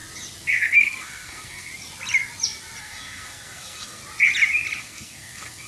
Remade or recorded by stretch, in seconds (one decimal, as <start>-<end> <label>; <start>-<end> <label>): 0.0-0.6 recorded; 0.6-1.7 remade; 1.7-2.8 recorded; 2.8-4.0 remade; 4.0-4.8 recorded; 4.8-5.7 remade